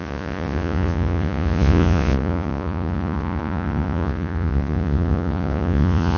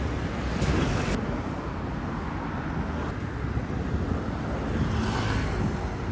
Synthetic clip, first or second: first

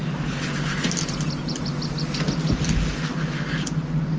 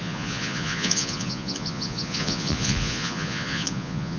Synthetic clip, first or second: second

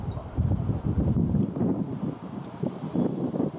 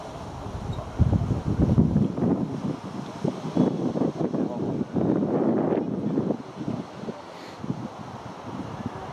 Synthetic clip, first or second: first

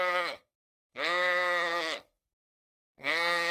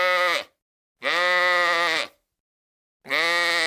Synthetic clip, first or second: first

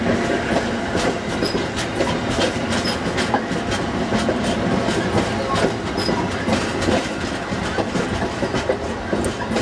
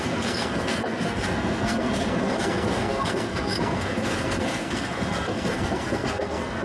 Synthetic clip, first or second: second